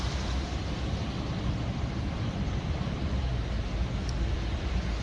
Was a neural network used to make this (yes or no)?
yes